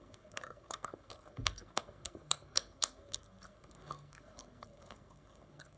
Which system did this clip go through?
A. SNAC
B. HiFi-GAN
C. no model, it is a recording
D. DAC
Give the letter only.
A